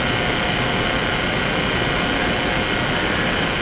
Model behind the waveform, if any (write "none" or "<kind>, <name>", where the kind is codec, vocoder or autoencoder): none